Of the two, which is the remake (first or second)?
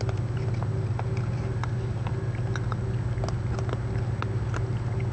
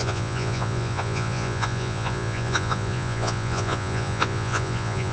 second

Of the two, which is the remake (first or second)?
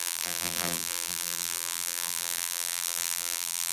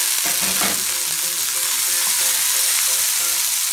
first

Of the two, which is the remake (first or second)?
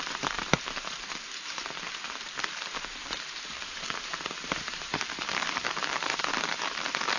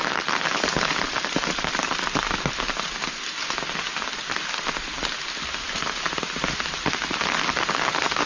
first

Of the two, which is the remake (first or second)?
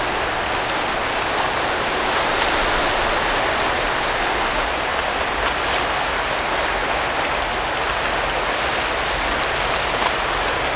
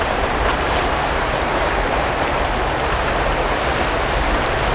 second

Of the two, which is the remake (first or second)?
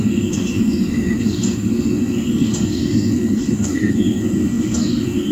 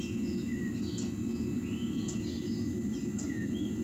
first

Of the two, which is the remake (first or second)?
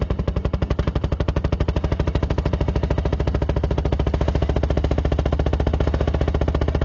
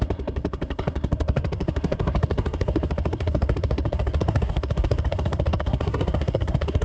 second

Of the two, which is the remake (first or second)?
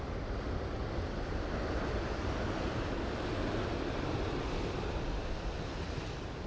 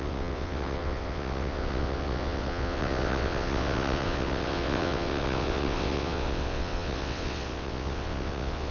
second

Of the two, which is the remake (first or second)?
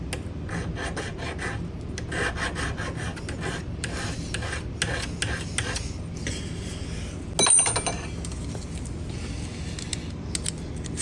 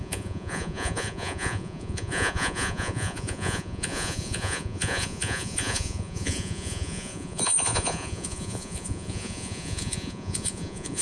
second